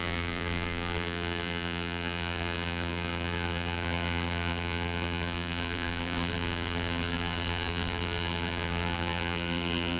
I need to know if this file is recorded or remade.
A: remade